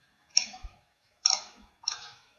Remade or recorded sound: remade